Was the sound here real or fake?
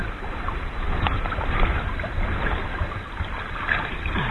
real